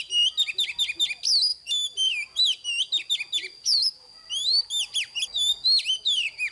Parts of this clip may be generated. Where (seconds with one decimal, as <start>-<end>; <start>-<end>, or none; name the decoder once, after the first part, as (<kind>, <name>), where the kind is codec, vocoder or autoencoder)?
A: 3.4-3.9 (vocoder, BigVGAN v2)